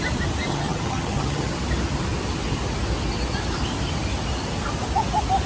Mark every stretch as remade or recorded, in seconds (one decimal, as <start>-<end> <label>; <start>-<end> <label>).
0.0-0.5 recorded; 0.5-1.5 remade; 1.5-5.5 recorded

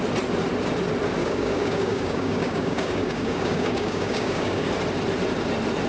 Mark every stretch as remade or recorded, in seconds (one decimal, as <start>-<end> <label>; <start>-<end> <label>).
0.0-1.2 recorded; 1.2-4.7 remade; 4.7-5.9 recorded